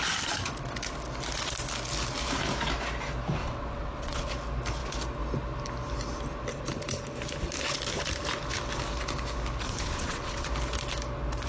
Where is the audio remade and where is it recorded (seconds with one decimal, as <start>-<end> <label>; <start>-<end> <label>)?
0.0-3.4 recorded; 3.4-4.3 remade; 4.3-9.6 recorded; 9.6-10.5 remade; 10.5-11.5 recorded